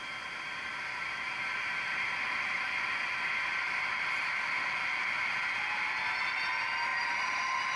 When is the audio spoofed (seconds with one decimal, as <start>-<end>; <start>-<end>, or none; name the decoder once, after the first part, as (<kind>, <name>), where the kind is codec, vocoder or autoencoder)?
0.0-7.8 (vocoder, BigVGAN v2)